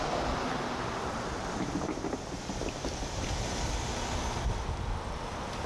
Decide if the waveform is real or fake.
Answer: real